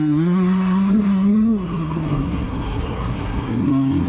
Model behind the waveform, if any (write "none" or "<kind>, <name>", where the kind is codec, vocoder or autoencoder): codec, SNAC